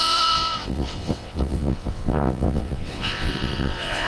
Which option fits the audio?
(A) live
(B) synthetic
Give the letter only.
B